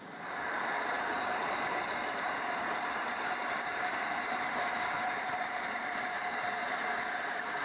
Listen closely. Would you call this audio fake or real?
fake